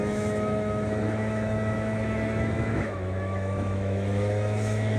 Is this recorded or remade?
remade